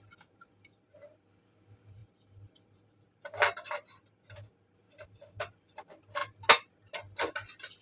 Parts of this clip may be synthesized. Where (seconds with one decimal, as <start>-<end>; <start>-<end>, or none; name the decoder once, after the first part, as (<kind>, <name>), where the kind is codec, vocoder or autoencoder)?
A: none